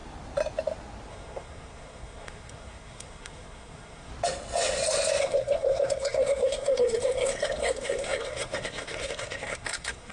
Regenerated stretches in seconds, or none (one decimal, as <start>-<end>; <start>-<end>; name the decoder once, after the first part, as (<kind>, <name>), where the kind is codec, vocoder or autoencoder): 1.1-4.1 (codec, SNAC); 5.2-10.1